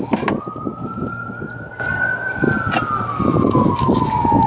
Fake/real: real